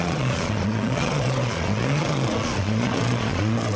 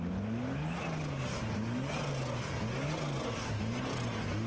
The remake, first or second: first